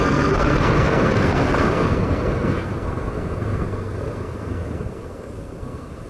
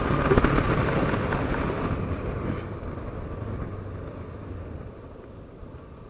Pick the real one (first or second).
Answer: second